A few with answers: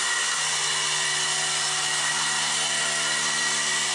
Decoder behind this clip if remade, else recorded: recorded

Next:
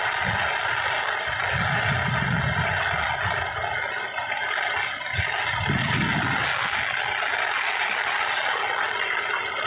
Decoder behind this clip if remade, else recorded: recorded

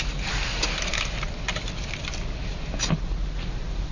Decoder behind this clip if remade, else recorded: recorded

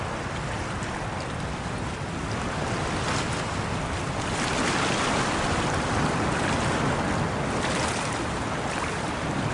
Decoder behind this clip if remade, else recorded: recorded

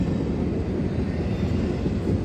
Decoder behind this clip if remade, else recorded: recorded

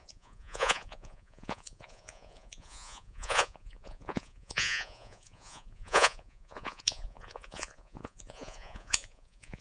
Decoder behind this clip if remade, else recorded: remade, vocoder, Vocos